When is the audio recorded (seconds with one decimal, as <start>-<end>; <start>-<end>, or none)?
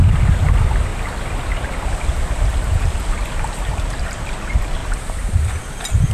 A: 0.0-3.7; 4.3-6.1